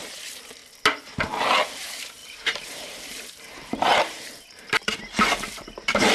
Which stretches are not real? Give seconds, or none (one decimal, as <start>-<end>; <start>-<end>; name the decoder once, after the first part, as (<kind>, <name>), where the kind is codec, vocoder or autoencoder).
0.0-0.6 (vocoder, BigVGAN v2); 1.8-6.1